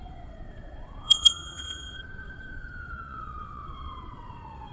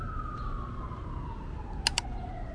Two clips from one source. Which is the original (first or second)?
second